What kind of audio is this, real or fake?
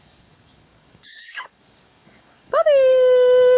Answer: fake